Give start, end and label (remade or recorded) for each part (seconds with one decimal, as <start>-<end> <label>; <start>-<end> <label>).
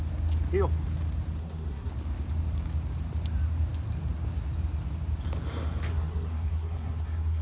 0.0-1.4 recorded; 1.4-1.9 remade; 1.9-5.9 recorded; 5.9-7.4 remade